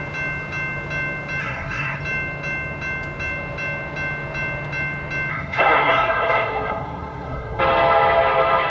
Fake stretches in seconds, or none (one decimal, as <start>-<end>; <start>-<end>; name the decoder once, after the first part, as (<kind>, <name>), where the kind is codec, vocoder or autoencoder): 1.4-2.0 (codec, SNAC); 5.3-7.6